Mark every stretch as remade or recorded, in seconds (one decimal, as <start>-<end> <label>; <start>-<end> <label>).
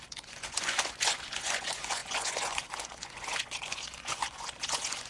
0.0-5.1 remade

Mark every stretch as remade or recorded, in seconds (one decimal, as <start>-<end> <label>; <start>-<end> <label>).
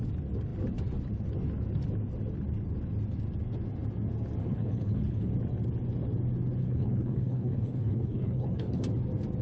0.0-4.4 recorded; 4.4-5.3 remade; 5.3-6.6 recorded; 6.6-8.8 remade; 8.8-9.4 recorded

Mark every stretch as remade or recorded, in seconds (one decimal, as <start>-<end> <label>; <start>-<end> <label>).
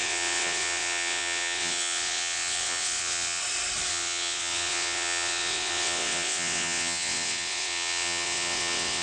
0.0-3.4 remade; 3.4-3.9 recorded; 3.9-9.0 remade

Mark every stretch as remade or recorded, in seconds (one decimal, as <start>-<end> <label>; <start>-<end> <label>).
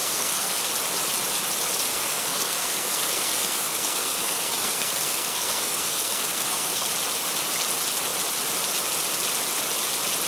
0.0-0.7 remade; 0.7-1.9 recorded; 1.9-6.9 remade; 6.9-10.3 recorded